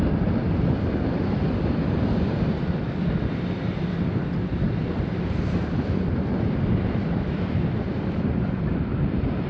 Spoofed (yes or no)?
yes